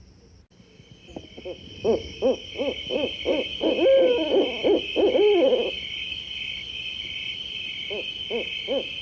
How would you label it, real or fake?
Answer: real